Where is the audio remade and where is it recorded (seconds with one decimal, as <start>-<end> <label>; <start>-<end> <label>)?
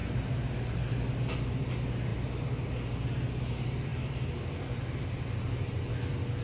0.0-6.4 recorded